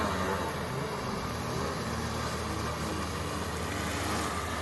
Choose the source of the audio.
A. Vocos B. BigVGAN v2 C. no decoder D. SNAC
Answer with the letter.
C